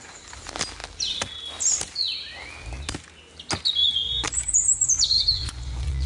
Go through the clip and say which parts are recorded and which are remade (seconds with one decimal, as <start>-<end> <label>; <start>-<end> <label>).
0.0-3.8 recorded; 3.8-4.5 remade; 4.5-5.1 recorded; 5.1-6.1 remade